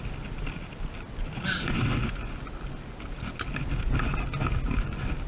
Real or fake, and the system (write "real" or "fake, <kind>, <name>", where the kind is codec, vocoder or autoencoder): real